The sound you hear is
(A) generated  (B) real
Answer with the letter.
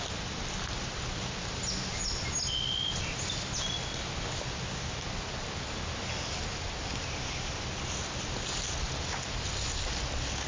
B